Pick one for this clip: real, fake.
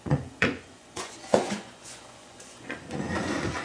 fake